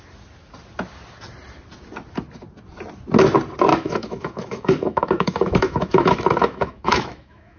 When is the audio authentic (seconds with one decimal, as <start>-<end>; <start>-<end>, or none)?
0.0-3.7